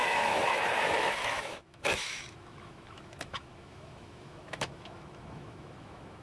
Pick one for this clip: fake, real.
fake